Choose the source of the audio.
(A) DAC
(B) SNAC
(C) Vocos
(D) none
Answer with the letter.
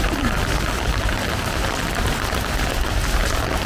D